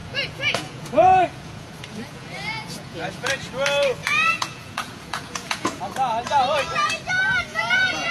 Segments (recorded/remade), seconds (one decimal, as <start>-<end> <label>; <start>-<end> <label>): 0.0-3.5 remade; 3.5-4.0 recorded; 4.0-5.8 remade; 5.8-7.5 recorded; 7.5-8.1 remade